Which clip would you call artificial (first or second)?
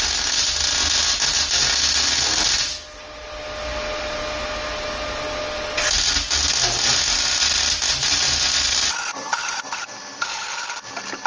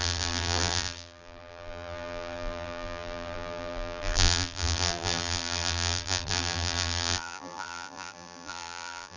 second